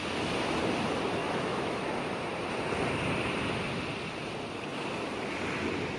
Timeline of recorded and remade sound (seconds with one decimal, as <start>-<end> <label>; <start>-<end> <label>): 0.0-1.2 recorded; 1.2-1.8 remade; 1.8-6.0 recorded